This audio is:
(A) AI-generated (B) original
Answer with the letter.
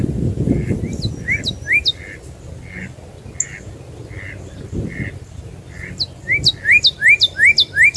B